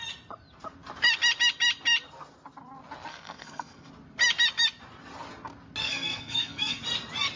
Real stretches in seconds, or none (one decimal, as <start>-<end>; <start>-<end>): 0.0-3.1; 3.9-5.8; 6.8-7.4